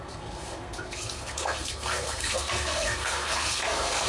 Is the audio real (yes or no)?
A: no